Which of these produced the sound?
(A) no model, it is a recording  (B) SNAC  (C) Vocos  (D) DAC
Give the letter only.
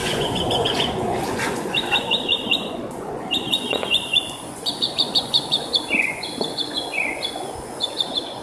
C